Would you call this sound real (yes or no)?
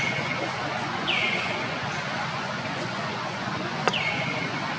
no